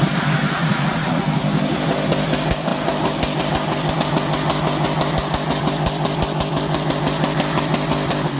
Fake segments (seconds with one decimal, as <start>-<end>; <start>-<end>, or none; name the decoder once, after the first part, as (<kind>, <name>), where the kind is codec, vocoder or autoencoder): 0.6-1.2 (vocoder, Vocos)

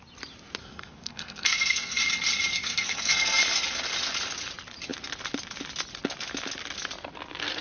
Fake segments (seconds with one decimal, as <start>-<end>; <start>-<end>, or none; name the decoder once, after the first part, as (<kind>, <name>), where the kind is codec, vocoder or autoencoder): 0.6-2.0 (codec, SNAC); 2.5-3.4

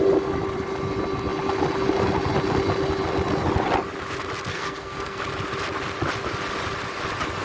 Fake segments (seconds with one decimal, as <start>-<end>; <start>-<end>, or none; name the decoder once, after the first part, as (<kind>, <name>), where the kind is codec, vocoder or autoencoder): 4.5-5.2 (codec, SNAC)

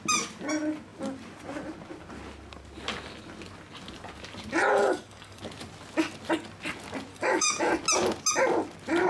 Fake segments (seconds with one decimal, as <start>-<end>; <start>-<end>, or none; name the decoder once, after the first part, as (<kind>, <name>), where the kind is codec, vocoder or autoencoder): 4.7-5.4 (codec, DAC); 7.1-7.7

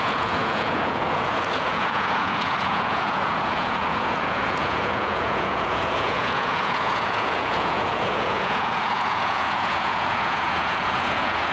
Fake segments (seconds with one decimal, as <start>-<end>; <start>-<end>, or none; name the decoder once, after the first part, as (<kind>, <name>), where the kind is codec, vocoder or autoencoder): 0.0-11.5 (vocoder, Vocos)

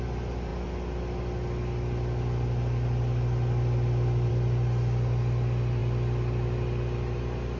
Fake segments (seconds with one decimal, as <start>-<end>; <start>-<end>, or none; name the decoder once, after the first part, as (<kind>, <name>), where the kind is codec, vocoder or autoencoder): none